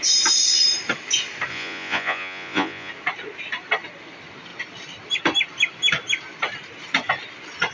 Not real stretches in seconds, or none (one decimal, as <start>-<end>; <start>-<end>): 1.5-2.9